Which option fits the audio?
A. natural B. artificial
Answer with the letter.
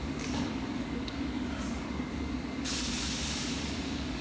B